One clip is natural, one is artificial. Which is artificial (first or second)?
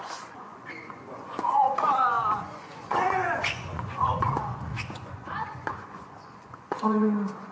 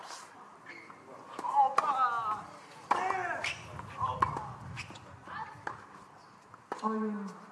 first